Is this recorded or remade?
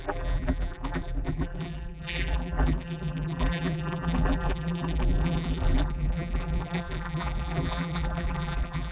remade